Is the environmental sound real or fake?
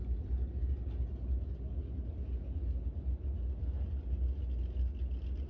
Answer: real